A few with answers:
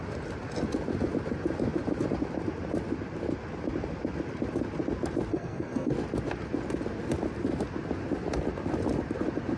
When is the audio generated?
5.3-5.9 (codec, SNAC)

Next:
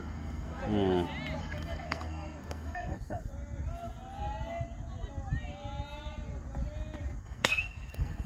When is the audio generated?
0.0-0.6 (codec, SNAC); 1.4-3.3; 7.2-8.3

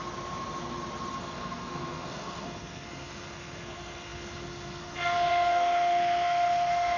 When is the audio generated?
1.1-7.0 (codec, SNAC)

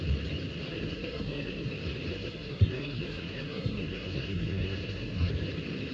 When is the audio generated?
0.7-1.7 (codec, SNAC); 2.1-5.3

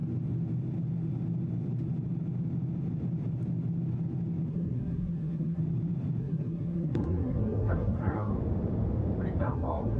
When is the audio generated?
4.5-5.6 (codec, SNAC); 6.2-8.3; 9.4-10.0

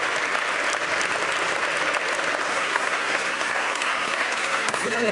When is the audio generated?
2.5-5.1 (codec, SNAC)